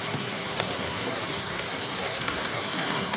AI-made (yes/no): yes